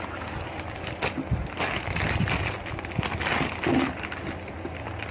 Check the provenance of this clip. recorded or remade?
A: recorded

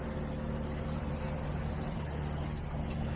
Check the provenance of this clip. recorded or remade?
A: recorded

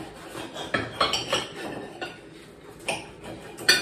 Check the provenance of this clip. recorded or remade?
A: recorded